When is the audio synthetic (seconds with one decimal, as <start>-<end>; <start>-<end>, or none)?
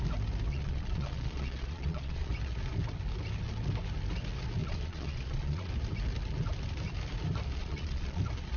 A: 0.5-2.3; 4.6-5.7; 7.6-8.2